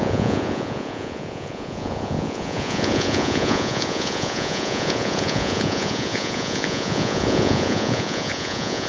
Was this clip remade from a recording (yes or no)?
yes